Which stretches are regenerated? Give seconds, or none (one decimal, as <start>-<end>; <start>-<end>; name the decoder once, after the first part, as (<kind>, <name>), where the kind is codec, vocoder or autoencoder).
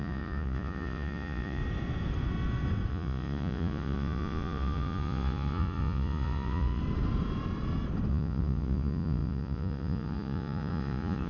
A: 0.0-1.6 (vocoder, Vocos); 2.9-6.8; 8.1-11.3